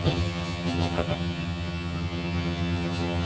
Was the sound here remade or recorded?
remade